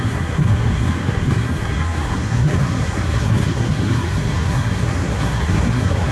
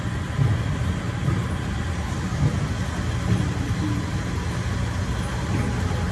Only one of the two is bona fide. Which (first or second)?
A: second